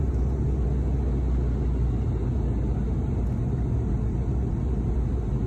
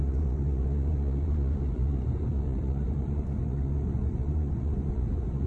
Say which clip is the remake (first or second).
second